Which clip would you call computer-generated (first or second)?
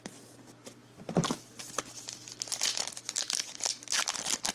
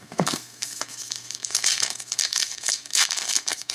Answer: second